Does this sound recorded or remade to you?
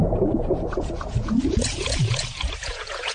remade